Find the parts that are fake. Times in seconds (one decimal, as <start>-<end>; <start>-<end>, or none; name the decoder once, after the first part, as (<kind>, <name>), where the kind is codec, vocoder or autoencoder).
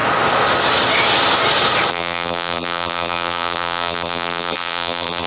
1.9-5.3 (vocoder, BigVGAN v2)